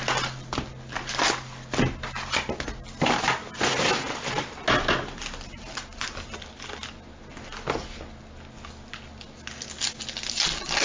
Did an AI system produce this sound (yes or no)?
no